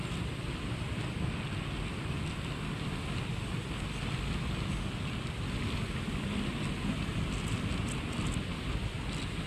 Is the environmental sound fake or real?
real